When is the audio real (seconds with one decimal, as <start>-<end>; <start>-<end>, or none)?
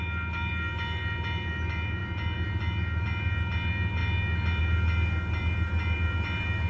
0.0-6.7